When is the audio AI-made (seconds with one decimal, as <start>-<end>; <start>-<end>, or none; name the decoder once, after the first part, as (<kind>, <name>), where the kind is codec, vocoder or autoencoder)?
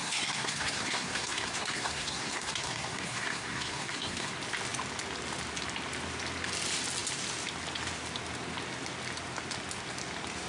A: 0.0-4.3 (codec, SNAC)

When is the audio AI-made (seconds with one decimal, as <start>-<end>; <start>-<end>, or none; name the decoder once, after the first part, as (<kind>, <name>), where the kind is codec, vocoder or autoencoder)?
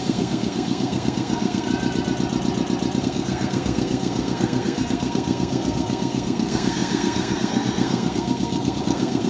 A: 0.0-1.7 (codec, SNAC); 3.0-9.3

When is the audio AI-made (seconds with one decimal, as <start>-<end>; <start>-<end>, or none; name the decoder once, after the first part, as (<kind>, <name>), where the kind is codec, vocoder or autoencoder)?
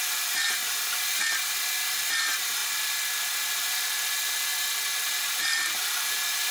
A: none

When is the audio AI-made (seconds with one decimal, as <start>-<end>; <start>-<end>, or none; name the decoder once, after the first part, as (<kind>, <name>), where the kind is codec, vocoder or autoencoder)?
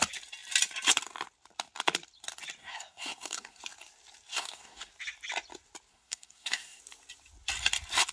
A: 2.6-3.6 (codec, SNAC); 4.3-4.9; 5.9-6.8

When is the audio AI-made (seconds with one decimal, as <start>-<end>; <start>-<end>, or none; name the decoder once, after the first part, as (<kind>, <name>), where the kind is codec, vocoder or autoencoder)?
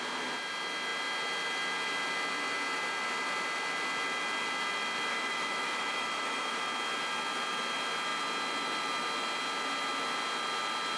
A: 5.1-6.6 (autoencoder, DAC-VAE)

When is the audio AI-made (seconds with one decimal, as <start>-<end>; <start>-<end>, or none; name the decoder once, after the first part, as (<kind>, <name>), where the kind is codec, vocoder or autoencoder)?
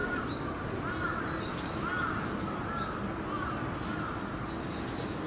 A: none